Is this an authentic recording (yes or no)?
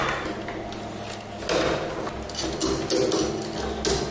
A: yes